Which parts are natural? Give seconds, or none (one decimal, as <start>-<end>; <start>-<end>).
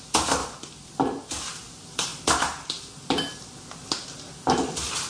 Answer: 0.0-5.1